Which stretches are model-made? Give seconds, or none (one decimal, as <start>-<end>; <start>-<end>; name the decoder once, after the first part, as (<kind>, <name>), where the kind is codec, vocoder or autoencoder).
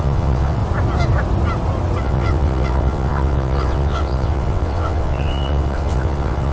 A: 0.0-0.6 (vocoder, WaveNeXt); 2.0-6.5